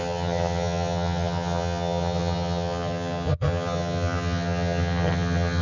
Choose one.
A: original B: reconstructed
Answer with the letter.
B